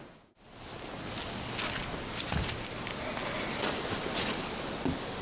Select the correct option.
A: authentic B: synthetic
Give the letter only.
A